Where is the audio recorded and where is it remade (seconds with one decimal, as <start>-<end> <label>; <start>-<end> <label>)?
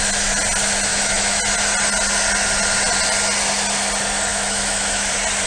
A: 0.0-0.9 recorded; 0.9-1.4 remade; 1.4-4.3 recorded; 4.3-5.1 remade; 5.1-5.5 recorded